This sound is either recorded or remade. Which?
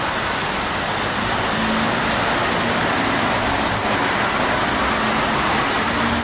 recorded